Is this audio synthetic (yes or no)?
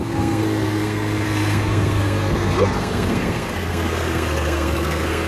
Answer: yes